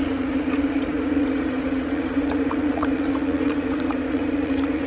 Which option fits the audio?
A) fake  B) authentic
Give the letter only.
A